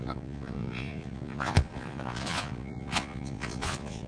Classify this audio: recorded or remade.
remade